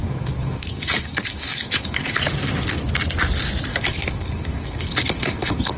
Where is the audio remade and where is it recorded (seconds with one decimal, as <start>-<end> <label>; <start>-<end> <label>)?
0.0-2.2 remade; 2.2-3.7 recorded; 3.7-5.8 remade